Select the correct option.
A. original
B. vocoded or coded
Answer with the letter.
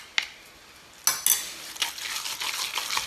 A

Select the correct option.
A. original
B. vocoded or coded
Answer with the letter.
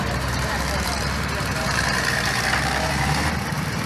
B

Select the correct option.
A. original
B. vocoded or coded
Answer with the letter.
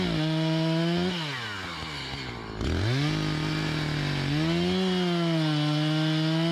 A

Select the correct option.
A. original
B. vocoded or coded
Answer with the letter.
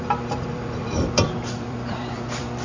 B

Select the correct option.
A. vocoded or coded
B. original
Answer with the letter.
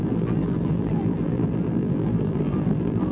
A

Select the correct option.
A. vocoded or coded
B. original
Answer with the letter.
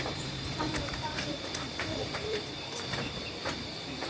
A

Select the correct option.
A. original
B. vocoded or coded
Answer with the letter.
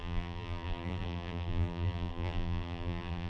B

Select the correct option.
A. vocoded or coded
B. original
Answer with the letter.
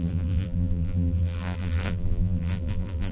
A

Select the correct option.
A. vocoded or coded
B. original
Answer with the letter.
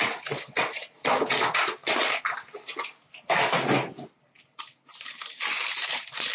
B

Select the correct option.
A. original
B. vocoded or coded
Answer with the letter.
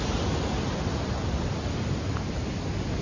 A